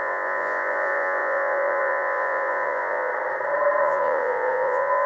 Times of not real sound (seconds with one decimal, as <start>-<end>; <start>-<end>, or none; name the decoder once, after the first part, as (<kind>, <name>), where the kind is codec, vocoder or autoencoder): 0.0-3.1 (vocoder, Vocos); 3.8-5.1